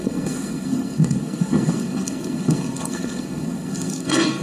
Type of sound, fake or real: fake